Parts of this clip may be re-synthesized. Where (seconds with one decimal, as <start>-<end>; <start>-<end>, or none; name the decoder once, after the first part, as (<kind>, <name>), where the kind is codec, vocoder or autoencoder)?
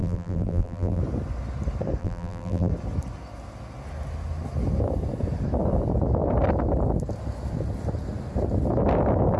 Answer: 0.0-1.0 (vocoder, BigVGAN v2); 2.0-2.7